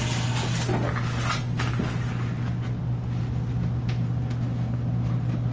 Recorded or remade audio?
recorded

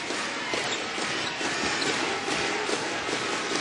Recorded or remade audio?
recorded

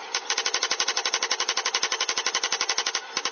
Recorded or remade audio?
recorded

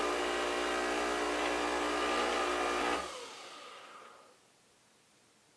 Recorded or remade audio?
recorded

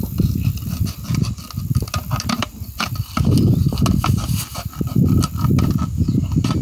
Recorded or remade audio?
remade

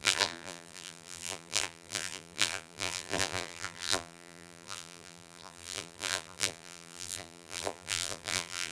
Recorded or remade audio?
remade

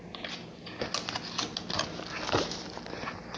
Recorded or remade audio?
recorded